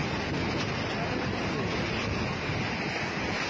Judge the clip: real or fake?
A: real